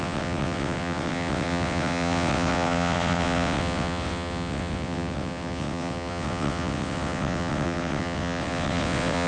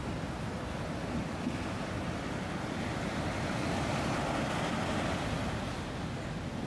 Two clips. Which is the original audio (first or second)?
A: second